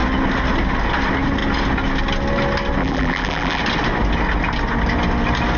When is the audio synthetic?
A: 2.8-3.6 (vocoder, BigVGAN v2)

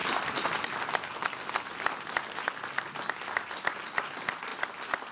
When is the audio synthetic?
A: none

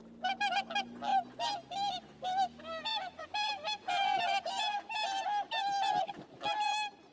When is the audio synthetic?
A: 2.9-5.5 (vocoder, BigVGAN v2)

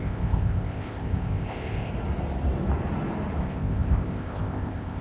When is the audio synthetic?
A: 0.0-1.9 (codec, ZipCodec); 3.4-5.0

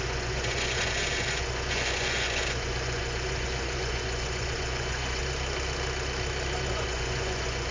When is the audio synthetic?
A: 0.0-5.2 (vocoder, Vocos); 6.7-7.7

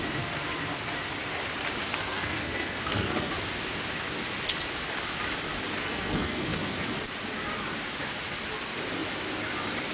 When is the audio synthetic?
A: 1.8-3.3 (codec, SNAC); 5.8-7.0

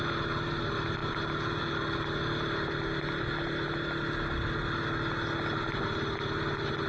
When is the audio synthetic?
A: none

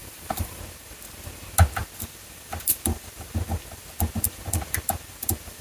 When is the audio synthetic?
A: 0.0-0.6 (vocoder, BigVGAN v2)